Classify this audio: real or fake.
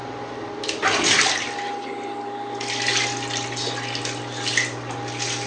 real